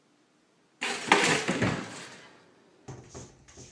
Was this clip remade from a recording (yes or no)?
no